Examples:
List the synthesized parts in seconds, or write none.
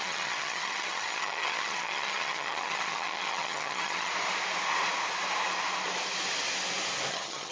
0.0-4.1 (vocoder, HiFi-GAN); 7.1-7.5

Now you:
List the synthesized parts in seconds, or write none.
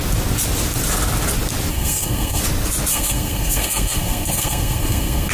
1.7-2.4 (codec, SNAC); 2.9-5.3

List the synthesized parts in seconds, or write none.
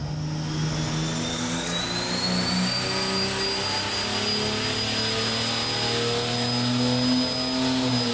1.3-1.8 (codec, DAC)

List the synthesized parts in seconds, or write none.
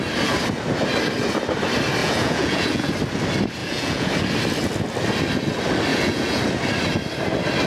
2.0-2.9 (vocoder, Vocos); 3.6-4.1; 5.9-6.4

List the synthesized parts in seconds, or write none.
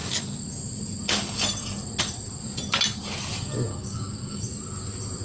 3.7-4.4 (codec, DAC)